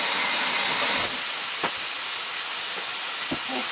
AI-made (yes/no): no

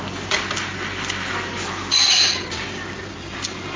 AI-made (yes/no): no